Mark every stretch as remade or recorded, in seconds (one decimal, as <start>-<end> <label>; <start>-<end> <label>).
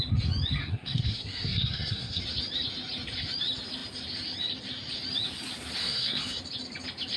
0.0-0.6 recorded; 0.6-2.2 remade; 2.2-5.8 recorded; 5.8-6.4 remade; 6.4-7.2 recorded